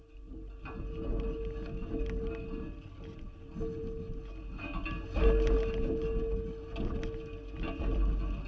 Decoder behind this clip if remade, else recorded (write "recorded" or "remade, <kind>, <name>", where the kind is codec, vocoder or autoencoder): recorded